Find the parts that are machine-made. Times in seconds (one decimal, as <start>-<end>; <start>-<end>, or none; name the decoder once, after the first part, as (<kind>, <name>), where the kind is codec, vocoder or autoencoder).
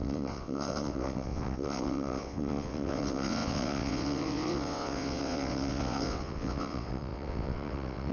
0.0-8.1 (vocoder, WaveNeXt)